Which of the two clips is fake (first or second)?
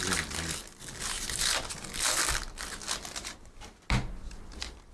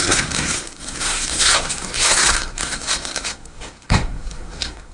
second